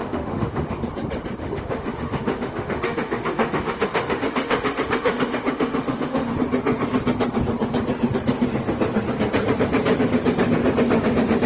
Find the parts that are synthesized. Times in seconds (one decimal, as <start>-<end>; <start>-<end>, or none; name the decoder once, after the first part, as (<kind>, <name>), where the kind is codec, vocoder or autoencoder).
0.0-0.8 (autoencoder, DAC-VAE); 1.4-6.3